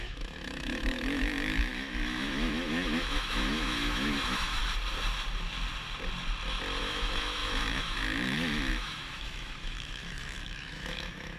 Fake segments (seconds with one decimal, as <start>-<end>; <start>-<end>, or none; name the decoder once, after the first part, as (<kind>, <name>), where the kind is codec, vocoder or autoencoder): 0.0-4.6 (autoencoder, DAC-VAE); 6.8-11.4